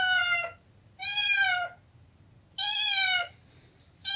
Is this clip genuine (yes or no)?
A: yes